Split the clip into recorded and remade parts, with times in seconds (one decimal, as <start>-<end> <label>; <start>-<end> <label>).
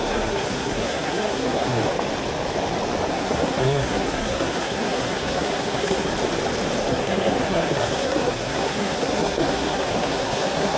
0.0-1.8 remade; 1.8-3.1 recorded; 3.1-6.1 remade; 6.1-6.9 recorded; 6.9-10.8 remade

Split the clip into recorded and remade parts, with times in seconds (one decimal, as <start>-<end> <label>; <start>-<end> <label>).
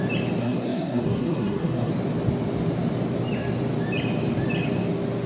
0.0-0.4 recorded; 0.4-1.9 remade; 1.9-5.3 recorded